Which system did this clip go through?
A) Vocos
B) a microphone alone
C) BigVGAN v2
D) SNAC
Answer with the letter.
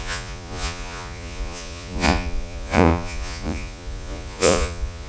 A